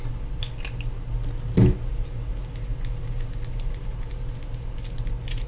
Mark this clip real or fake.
real